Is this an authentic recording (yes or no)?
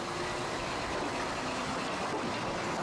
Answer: yes